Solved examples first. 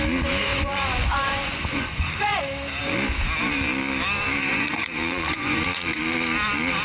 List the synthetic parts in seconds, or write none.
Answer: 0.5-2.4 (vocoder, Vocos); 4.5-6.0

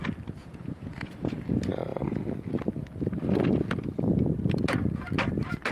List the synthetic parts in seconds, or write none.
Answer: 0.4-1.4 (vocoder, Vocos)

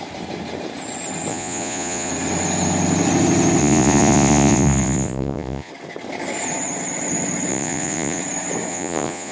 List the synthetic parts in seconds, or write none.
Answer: 1.3-2.1 (vocoder, Vocos); 3.6-5.7; 7.5-8.2; 8.7-9.3